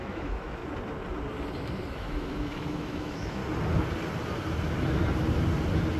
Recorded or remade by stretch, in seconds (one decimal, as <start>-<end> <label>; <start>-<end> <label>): 0.0-0.6 remade; 0.6-1.9 recorded; 1.9-3.4 remade; 3.4-6.0 recorded